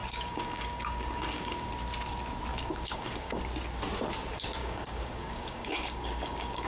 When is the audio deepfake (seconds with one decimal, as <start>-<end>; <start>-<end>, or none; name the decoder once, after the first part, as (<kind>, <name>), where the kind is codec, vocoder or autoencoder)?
0.0-1.7 (codec, DAC); 2.5-3.4; 4.6-6.7